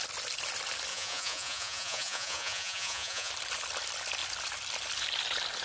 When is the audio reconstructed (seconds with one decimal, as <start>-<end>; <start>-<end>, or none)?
0.9-3.3